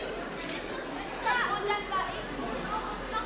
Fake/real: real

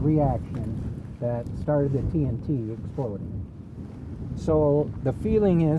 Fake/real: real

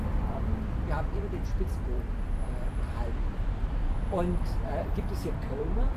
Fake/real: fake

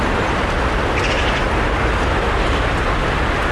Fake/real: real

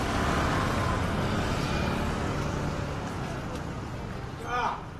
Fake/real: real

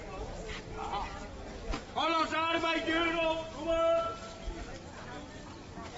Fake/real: real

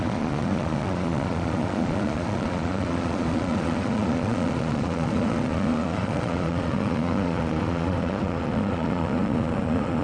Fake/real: fake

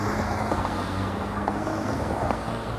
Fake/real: fake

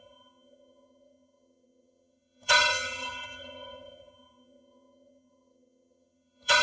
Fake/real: fake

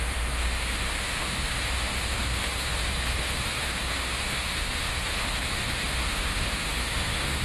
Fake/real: fake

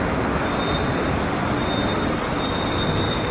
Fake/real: real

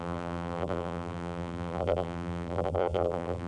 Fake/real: fake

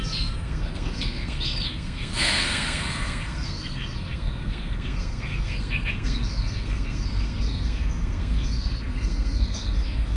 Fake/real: fake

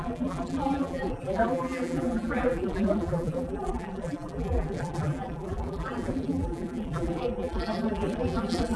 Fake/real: fake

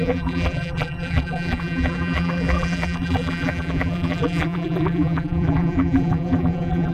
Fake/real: fake